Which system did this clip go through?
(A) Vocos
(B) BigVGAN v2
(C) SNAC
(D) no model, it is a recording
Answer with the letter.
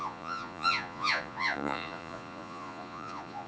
A